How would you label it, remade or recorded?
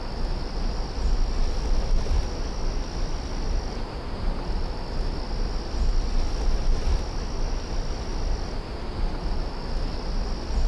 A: recorded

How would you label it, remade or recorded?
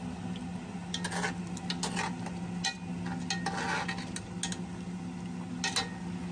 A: recorded